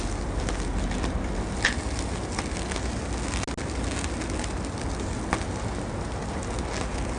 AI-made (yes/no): no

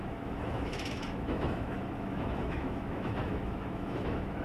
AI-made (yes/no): yes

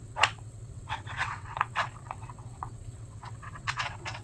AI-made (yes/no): yes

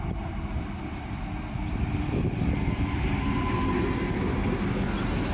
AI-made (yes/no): no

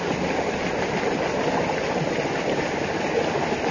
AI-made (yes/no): no